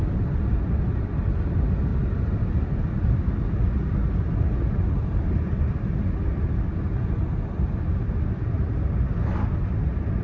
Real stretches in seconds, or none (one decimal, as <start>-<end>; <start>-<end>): 0.0-10.2